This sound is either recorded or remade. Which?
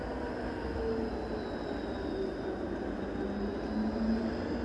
recorded